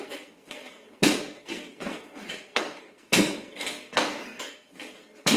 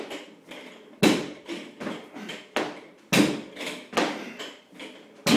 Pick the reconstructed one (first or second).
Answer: first